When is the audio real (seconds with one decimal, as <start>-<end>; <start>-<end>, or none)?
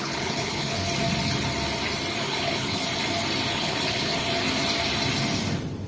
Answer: 0.8-2.2; 2.8-3.5; 4.1-5.9